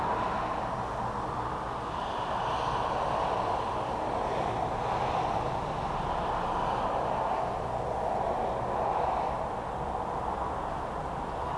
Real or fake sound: real